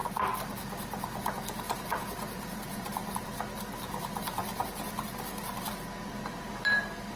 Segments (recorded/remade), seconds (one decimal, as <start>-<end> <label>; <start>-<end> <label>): 0.0-7.2 recorded